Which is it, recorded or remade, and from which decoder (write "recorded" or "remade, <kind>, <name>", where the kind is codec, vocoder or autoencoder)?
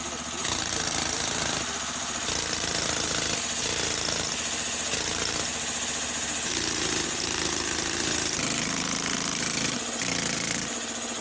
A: recorded